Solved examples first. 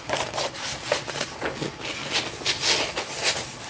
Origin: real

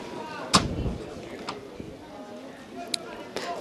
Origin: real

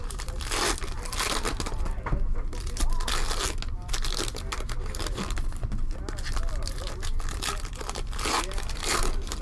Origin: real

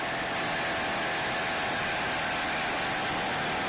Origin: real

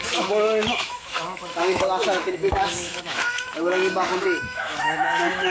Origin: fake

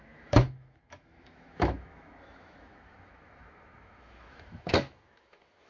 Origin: fake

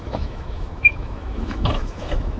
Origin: fake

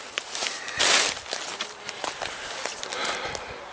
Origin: real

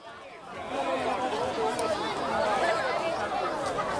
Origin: real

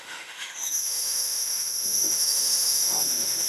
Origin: fake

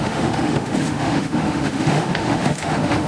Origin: fake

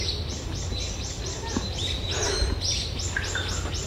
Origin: real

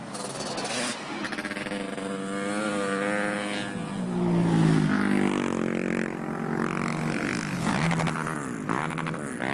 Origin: real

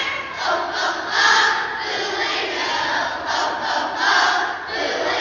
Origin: real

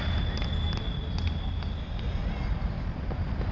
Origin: real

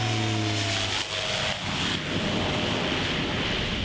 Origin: real